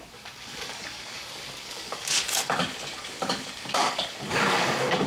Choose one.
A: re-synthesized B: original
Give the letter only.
A